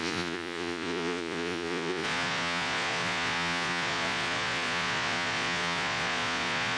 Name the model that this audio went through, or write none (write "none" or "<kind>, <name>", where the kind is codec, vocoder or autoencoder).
vocoder, Vocos